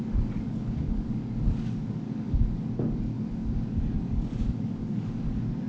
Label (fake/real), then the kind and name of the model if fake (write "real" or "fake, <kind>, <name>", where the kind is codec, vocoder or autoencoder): fake, codec, DAC